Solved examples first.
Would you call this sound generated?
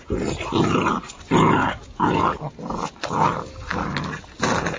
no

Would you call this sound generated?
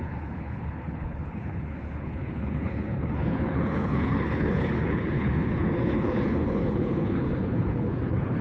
yes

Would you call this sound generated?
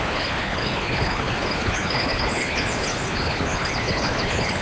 yes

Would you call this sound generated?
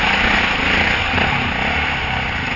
no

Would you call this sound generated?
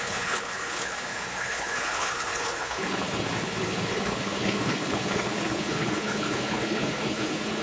yes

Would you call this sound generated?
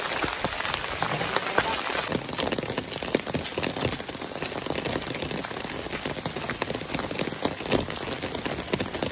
no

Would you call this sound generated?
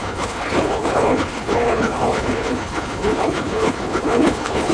yes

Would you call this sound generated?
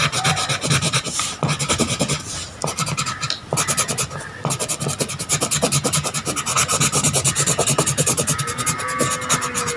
no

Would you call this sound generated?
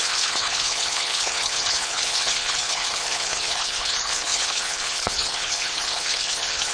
yes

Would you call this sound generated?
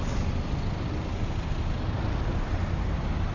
no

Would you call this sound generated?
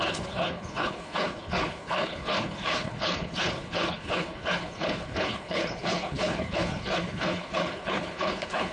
yes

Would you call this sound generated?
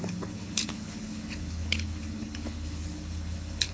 yes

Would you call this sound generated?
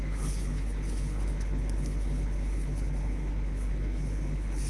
yes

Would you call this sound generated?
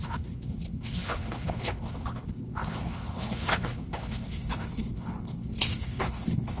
yes